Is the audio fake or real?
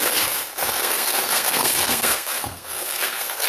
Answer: fake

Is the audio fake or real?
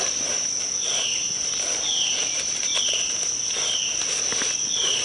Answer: real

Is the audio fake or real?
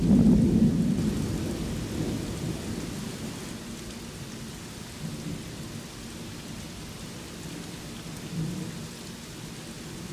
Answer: real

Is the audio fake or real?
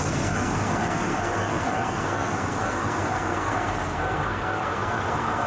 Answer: fake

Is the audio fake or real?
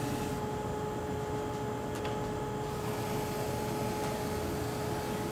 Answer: real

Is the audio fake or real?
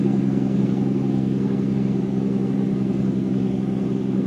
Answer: fake